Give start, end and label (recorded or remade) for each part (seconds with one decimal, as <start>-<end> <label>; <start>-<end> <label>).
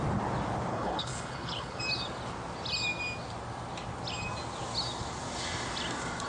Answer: 0.0-0.7 recorded; 0.7-1.8 remade; 1.8-6.3 recorded